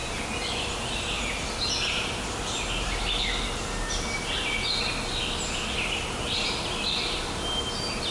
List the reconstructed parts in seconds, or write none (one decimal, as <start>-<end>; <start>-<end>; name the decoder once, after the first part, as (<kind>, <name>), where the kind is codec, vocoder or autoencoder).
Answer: none

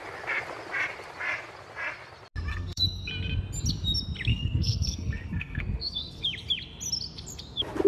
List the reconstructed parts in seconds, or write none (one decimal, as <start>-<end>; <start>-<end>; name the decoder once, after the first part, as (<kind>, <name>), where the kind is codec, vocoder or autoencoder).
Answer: 2.5-3.1 (codec, SNAC); 4.3-6.2

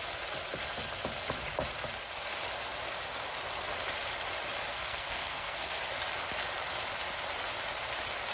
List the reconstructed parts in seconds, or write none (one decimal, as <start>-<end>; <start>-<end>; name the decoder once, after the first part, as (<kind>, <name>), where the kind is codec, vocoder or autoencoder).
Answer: 4.7-5.8 (codec, SNAC)

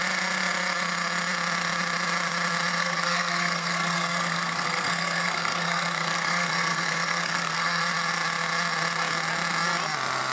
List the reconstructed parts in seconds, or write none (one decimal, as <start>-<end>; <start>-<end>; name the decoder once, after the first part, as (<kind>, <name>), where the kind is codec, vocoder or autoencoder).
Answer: 2.8-7.8 (codec, SNAC)

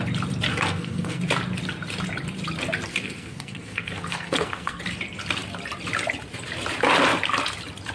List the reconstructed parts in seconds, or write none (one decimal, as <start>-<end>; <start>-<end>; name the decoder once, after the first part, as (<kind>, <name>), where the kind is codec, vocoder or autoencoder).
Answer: 0.5-1.2 (codec, SNAC); 2.9-4.8